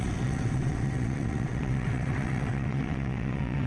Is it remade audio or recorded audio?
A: remade